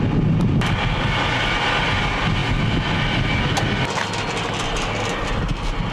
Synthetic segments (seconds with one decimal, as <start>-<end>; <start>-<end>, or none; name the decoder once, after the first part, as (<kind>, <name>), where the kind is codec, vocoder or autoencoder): none